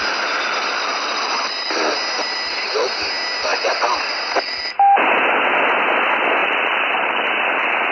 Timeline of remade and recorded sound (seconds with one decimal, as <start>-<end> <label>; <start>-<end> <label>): 0.0-3.5 recorded; 3.5-4.5 remade; 4.5-6.4 recorded; 6.4-7.2 remade; 7.2-7.9 recorded